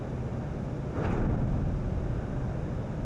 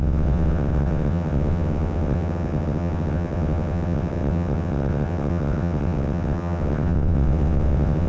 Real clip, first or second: first